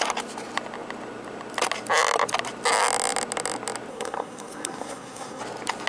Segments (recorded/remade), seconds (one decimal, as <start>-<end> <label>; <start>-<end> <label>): 0.0-3.9 recorded; 3.9-5.4 remade; 5.4-5.9 recorded